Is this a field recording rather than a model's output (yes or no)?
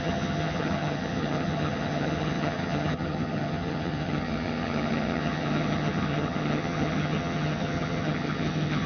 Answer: no